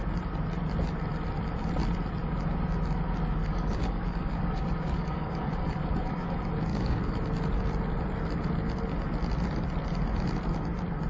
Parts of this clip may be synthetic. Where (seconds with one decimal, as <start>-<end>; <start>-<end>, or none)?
3.4-6.3; 6.7-7.2